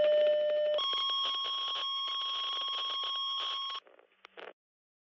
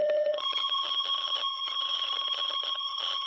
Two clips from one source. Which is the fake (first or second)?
second